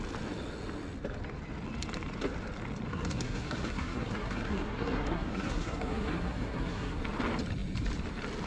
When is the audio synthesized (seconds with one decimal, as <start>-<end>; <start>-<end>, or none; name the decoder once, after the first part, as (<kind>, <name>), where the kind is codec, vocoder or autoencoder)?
2.9-7.0 (codec, SNAC)